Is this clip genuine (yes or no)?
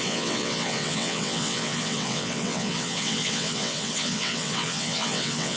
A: no